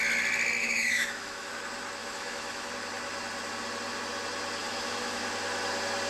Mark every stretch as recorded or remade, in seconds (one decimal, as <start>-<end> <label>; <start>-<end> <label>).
0.0-0.6 recorded; 0.6-1.5 remade; 1.5-2.0 recorded; 2.0-2.7 remade; 2.7-4.6 recorded; 4.6-5.2 remade; 5.2-6.1 recorded